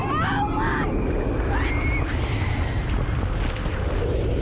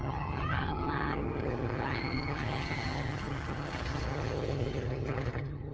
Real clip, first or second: first